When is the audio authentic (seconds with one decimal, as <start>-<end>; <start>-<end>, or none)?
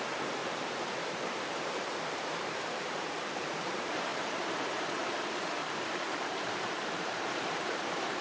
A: 0.4-1.0